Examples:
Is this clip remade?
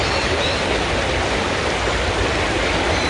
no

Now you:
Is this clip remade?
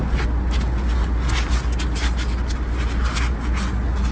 no